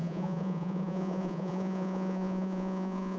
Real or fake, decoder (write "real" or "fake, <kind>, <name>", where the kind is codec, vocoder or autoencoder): fake, vocoder, Vocos